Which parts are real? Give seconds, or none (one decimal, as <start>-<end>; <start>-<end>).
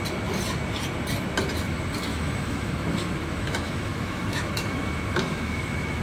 0.0-2.1